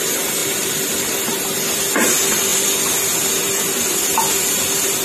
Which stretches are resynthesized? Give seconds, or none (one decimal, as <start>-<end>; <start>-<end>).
none